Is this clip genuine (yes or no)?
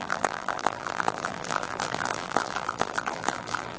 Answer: no